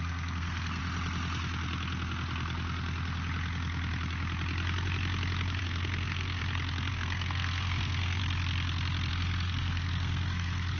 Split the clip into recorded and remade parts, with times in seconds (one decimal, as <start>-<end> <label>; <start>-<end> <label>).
0.0-0.8 remade; 0.8-5.6 recorded; 5.6-6.4 remade; 6.4-6.9 recorded; 6.9-8.2 remade; 8.2-9.1 recorded; 9.1-10.8 remade